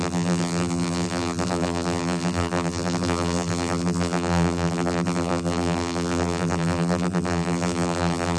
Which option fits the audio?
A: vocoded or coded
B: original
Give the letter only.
A